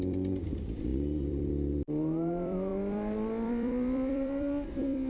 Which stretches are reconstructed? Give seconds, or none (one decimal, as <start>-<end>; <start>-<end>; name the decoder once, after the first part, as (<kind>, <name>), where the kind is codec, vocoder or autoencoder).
0.0-5.1 (vocoder, BigVGAN v2)